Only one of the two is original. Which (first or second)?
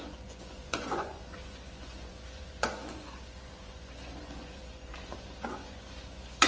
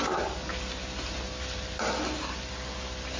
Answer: second